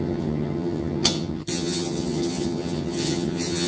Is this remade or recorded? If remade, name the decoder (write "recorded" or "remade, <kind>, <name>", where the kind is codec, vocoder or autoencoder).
remade, vocoder, HiFi-GAN